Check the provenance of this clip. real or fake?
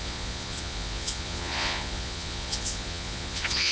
fake